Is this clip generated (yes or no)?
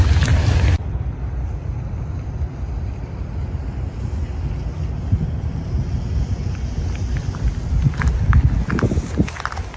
no